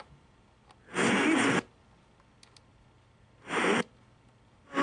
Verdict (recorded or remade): recorded